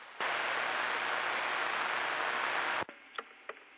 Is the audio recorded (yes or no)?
yes